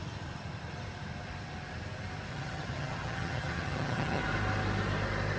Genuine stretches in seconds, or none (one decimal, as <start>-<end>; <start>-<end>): 0.0-2.3; 4.2-5.4

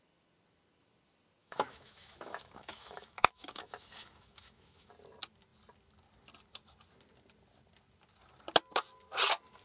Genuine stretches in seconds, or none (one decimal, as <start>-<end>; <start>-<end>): 0.0-1.4; 4.9-9.6

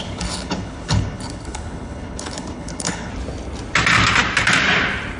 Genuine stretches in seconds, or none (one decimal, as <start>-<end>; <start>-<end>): 3.1-5.2

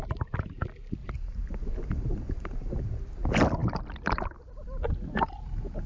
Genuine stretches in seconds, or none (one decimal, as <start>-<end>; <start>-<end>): 0.0-1.0; 2.8-5.9

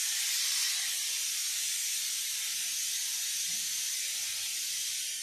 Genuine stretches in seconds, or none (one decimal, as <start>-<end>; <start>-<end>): 0.0-5.2

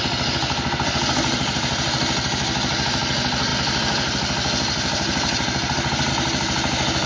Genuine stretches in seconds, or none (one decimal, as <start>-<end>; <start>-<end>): 0.0-7.1